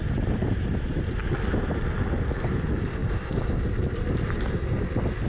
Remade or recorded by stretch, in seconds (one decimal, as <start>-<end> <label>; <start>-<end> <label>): 0.0-0.4 recorded; 0.4-1.2 remade; 1.2-3.0 recorded; 3.0-4.5 remade; 4.5-5.3 recorded